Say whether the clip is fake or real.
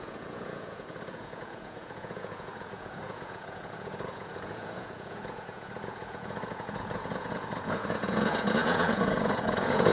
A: fake